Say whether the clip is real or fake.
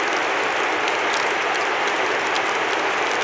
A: real